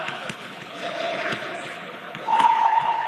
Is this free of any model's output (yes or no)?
no